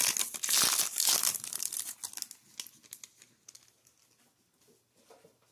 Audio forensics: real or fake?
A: real